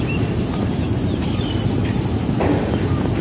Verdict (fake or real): real